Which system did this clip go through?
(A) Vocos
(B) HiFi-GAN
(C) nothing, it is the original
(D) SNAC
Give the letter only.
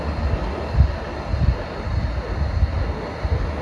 C